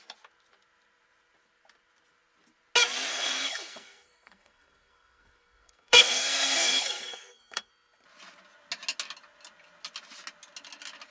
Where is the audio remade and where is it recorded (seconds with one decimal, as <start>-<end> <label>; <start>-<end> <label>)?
0.0-3.1 recorded; 3.1-7.7 remade; 7.7-11.1 recorded